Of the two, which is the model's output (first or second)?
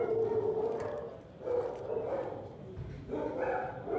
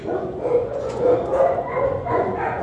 second